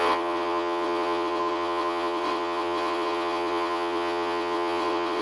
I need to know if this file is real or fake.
fake